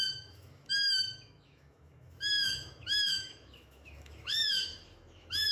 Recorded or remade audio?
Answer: remade